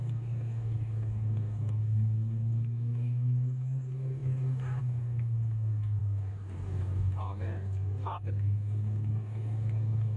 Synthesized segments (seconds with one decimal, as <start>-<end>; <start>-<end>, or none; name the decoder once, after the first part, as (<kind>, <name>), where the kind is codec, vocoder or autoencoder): 0.0-10.2 (codec, DAC)